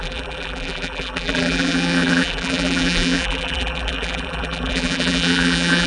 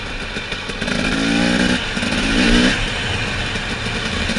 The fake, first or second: first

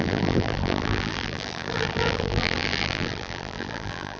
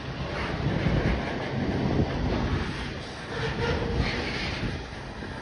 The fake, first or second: first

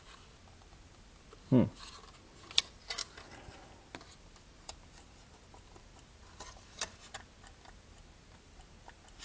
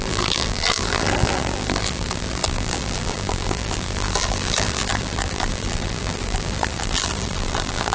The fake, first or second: second